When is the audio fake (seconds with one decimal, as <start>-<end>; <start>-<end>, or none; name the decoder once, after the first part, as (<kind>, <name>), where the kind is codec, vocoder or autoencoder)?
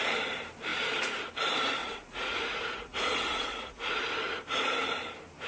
1.8-4.1 (vocoder, Vocos)